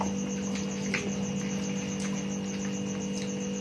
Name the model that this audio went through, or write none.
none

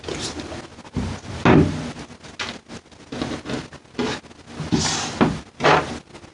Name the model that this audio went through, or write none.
none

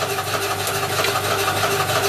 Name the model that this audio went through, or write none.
none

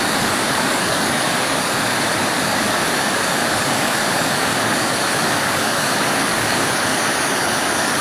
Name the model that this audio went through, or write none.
codec, DAC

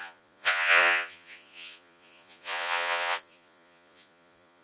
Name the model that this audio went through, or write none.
vocoder, Vocos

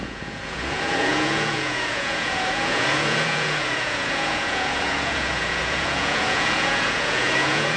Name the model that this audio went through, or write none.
vocoder, Vocos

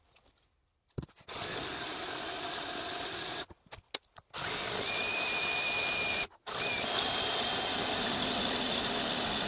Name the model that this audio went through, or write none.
none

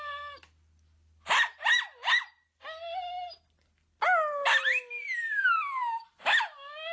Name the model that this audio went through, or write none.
none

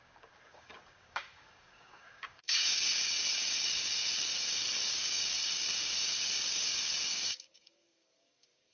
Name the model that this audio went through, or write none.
codec, DAC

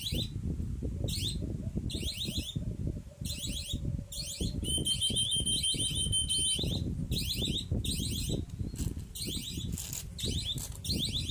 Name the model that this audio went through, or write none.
none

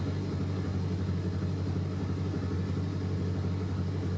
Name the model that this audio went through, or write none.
none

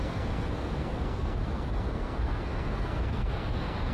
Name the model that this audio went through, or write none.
codec, SNAC